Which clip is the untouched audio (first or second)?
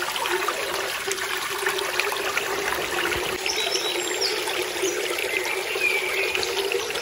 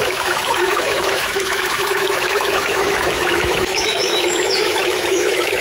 first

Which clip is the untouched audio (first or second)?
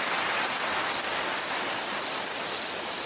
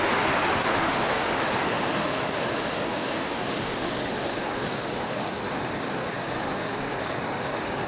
first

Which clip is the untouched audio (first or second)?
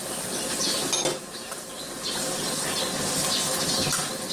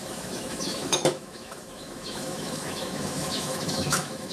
first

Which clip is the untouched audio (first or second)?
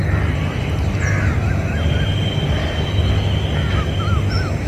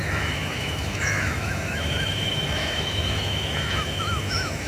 first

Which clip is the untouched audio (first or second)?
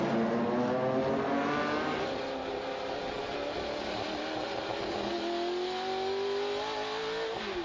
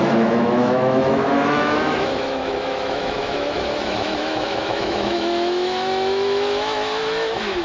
first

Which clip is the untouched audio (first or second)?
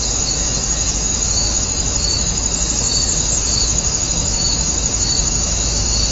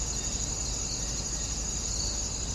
second